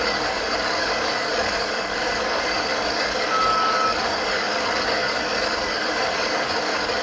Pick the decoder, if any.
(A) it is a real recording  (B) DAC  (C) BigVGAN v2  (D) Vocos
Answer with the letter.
B